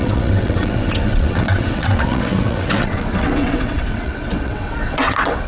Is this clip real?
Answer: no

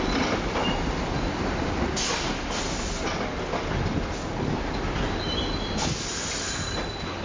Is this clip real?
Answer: yes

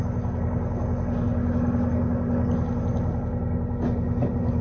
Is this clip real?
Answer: yes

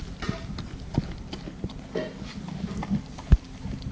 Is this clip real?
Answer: yes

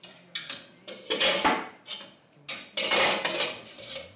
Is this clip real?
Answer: yes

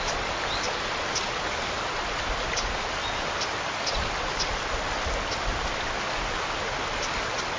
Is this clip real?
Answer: yes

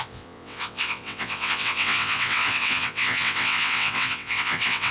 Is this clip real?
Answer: no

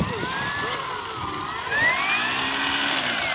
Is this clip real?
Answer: yes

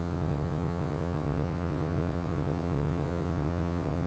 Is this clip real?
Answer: no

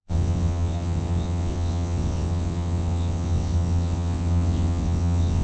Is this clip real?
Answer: no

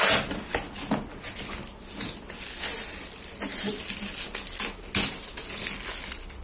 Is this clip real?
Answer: yes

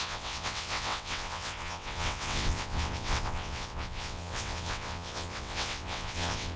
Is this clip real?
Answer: no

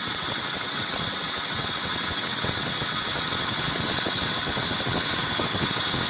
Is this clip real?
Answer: no